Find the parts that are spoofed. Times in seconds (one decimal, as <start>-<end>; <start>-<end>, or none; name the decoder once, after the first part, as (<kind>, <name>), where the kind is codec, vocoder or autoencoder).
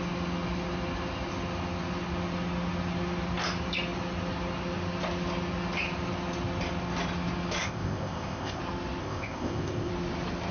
7.6-8.6 (codec, ZipCodec); 9.0-9.9